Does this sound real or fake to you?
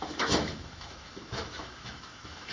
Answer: fake